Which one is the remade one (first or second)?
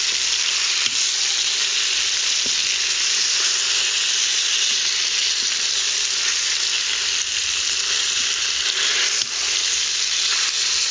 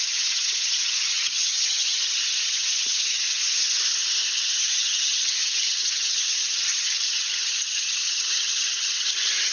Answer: second